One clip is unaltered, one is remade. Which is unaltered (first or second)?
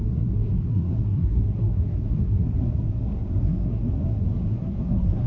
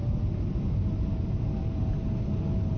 second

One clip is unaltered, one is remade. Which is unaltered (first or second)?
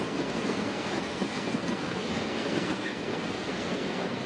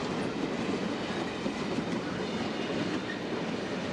second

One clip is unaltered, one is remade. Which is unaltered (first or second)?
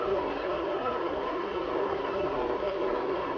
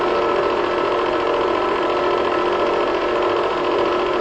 second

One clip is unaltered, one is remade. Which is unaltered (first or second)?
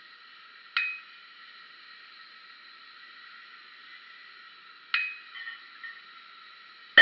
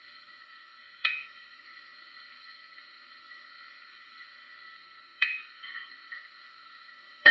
first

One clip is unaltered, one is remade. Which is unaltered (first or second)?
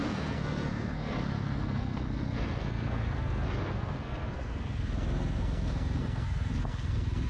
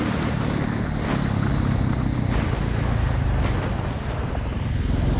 second